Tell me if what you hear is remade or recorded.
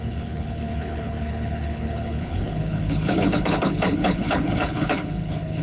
remade